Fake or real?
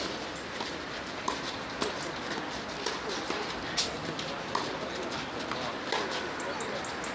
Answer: real